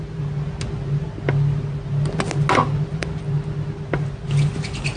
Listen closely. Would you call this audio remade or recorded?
recorded